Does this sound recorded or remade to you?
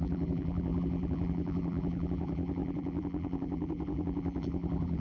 remade